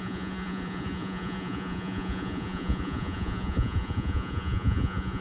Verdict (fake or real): fake